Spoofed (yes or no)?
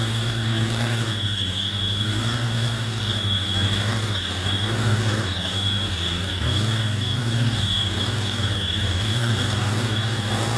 yes